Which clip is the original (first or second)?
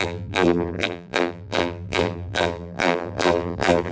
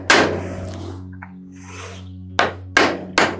second